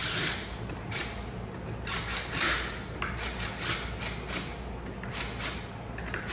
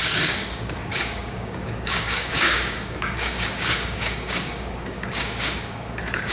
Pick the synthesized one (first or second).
second